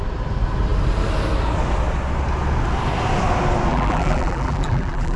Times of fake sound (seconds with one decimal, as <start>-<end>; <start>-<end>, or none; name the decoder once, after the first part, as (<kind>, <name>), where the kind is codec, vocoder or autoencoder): 3.7-5.2 (vocoder, BigVGAN v2)